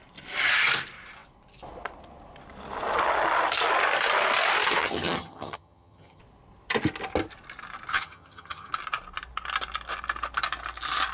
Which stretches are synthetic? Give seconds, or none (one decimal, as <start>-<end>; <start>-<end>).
4.8-6.2; 7.9-8.7